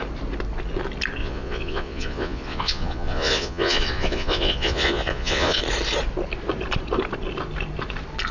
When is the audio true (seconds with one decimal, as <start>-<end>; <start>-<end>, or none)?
0.0-1.2; 5.6-8.3